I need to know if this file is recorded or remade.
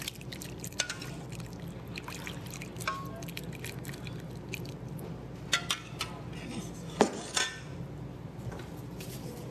recorded